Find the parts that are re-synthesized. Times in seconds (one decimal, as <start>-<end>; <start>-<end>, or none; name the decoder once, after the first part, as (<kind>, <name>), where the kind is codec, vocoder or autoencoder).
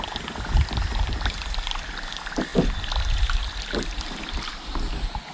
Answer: none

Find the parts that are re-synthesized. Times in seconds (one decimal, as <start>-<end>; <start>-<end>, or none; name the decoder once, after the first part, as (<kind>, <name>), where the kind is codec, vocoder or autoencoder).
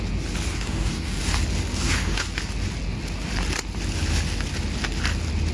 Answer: 0.5-1.2 (codec, DAC); 1.7-2.2